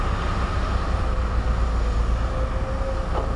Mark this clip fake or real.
real